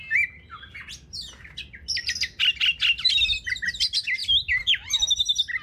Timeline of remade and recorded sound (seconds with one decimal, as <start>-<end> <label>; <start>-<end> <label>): 0.0-5.6 recorded